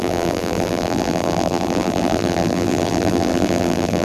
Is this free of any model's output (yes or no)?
no